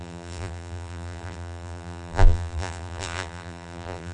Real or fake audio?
fake